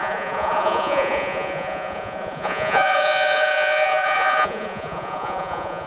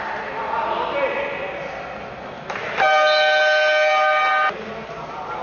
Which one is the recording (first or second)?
second